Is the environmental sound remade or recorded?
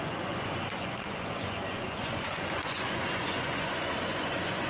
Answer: remade